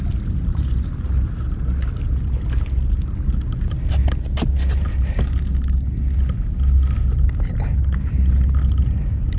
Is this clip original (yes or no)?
yes